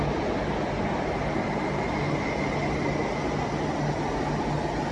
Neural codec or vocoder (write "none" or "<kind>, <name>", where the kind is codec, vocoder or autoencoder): none